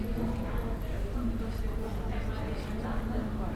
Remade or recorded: recorded